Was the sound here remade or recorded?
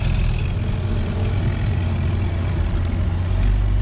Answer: recorded